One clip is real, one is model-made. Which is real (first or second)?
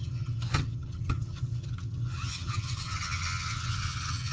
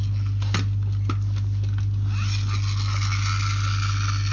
second